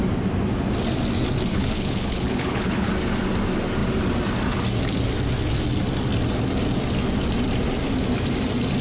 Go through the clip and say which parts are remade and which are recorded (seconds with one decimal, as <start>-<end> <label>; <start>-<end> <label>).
0.0-1.5 recorded; 1.5-2.9 remade; 2.9-8.8 recorded